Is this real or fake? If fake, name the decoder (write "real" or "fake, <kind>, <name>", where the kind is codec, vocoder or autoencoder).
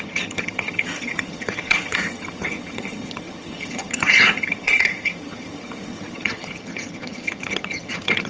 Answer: fake, vocoder, HiFi-GAN